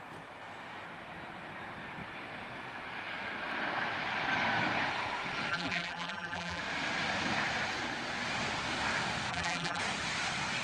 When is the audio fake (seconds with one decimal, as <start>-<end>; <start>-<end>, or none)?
5.5-6.6; 9.3-9.8